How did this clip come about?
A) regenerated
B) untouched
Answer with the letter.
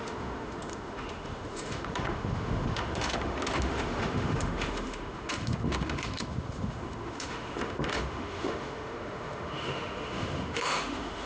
A